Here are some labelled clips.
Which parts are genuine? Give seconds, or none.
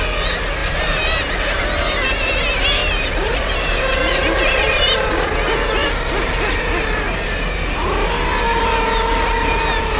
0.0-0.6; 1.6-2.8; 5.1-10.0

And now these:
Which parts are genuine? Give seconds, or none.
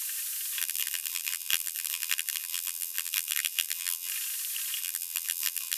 0.0-0.6; 4.1-4.8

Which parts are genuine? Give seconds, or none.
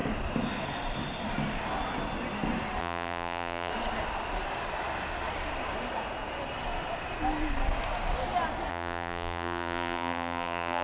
0.0-2.8; 3.7-8.7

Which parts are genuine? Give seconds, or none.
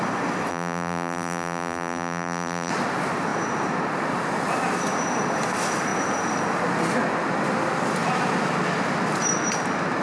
0.0-0.5; 2.7-10.0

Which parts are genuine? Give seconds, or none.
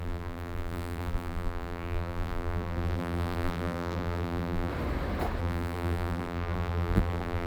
4.7-5.4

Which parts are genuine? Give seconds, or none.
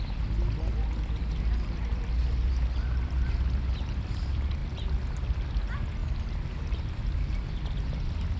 0.0-8.4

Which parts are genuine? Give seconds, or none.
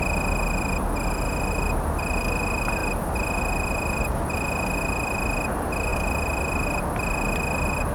0.0-5.9; 6.8-7.9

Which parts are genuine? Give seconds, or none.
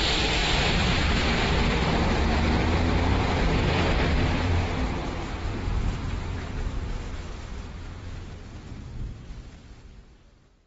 0.0-0.4; 1.9-3.1; 4.5-5.0; 8.3-10.7